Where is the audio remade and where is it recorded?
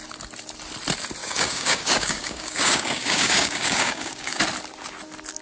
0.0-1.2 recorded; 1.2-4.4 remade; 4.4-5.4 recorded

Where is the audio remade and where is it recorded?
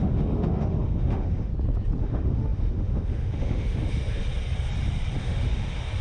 0.0-1.5 remade; 1.5-2.0 recorded; 2.0-4.2 remade; 4.2-5.2 recorded; 5.2-6.0 remade